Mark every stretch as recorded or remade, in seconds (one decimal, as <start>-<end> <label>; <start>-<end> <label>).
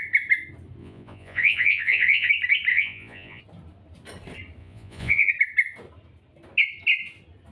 0.0-0.8 recorded; 0.8-2.3 remade; 2.3-2.7 recorded; 2.7-3.4 remade; 3.4-4.6 recorded; 4.6-5.3 remade; 5.3-7.5 recorded